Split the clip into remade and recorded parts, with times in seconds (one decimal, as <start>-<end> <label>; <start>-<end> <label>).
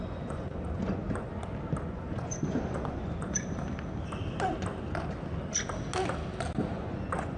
0.0-1.3 remade; 1.3-1.8 recorded; 1.8-3.4 remade; 3.4-6.7 recorded; 6.7-7.4 remade